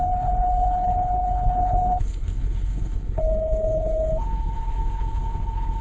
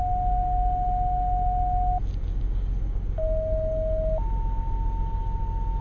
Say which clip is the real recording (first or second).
second